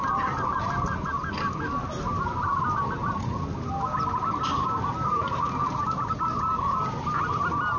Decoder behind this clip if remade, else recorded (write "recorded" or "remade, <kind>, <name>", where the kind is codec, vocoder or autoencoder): recorded